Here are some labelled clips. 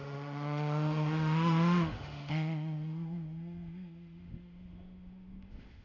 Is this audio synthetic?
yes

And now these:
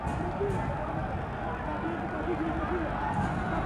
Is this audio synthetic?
no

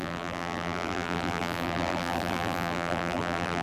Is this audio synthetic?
yes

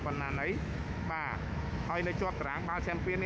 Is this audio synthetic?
yes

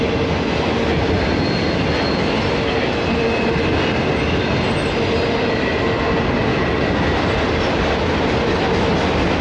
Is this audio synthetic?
no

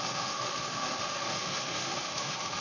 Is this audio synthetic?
yes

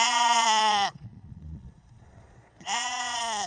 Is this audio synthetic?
yes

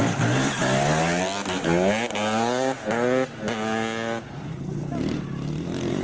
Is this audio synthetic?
no